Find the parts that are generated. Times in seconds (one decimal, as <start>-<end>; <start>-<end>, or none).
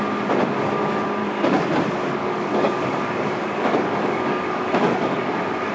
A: 1.2-1.8; 2.2-5.7